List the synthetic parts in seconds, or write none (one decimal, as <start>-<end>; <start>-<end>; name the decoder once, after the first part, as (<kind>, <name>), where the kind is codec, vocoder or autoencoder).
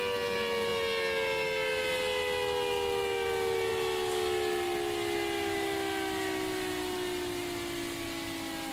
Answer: none